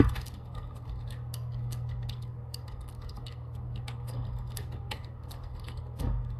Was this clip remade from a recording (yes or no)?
yes